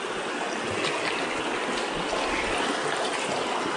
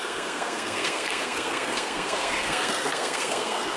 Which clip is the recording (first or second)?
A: first